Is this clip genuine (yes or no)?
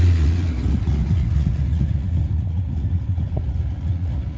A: no